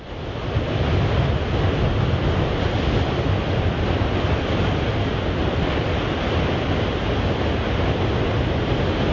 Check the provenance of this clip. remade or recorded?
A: recorded